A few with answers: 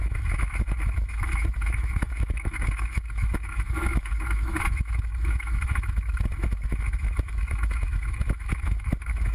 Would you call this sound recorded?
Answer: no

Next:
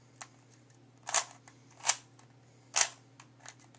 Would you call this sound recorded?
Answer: yes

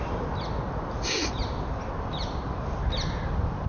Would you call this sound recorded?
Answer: yes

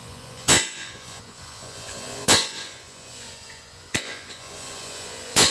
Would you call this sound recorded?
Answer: no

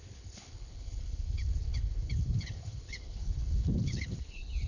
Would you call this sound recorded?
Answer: no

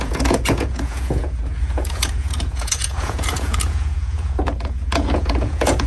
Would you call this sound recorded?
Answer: no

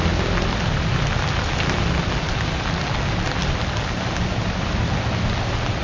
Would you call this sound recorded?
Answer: yes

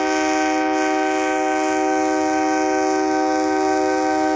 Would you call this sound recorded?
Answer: yes